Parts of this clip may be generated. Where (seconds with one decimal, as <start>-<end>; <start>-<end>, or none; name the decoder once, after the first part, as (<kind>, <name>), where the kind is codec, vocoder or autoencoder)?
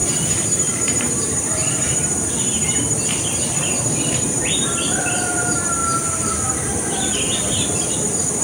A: 1.2-1.6 (vocoder, BigVGAN v2); 4.8-8.4